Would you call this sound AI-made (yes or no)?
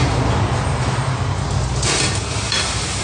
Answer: no